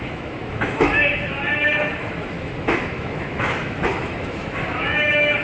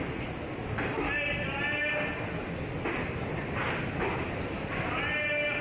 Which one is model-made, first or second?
first